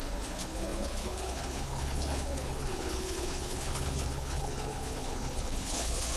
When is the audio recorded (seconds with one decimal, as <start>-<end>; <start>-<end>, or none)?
none